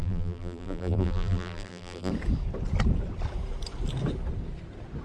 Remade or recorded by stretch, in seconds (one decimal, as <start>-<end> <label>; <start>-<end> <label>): 0.0-2.1 remade; 2.1-5.0 recorded

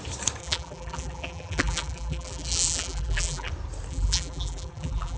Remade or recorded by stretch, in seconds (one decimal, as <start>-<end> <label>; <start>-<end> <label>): 0.0-0.4 recorded; 0.4-3.5 remade; 3.5-3.9 recorded; 3.9-5.2 remade

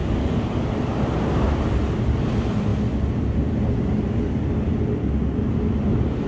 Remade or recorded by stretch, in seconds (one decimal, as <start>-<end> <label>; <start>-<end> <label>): 0.0-6.3 recorded

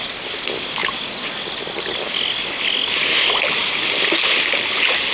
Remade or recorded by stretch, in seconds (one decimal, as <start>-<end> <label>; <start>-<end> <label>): 0.0-5.1 recorded